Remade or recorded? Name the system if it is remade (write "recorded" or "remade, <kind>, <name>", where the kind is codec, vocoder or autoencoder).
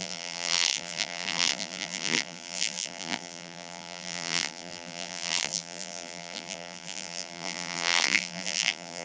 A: remade, vocoder, BigVGAN v2